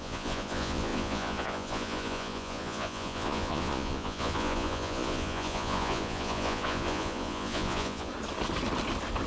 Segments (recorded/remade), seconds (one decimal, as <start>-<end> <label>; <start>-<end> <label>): 0.0-8.1 remade; 8.1-9.3 recorded